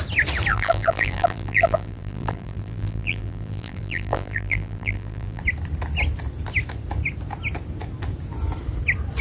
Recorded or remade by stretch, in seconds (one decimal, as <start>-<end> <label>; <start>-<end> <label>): 0.0-0.5 recorded; 0.5-5.4 remade; 5.4-9.2 recorded